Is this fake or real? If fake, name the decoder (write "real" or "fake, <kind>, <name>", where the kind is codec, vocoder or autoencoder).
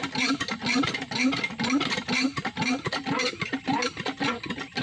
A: real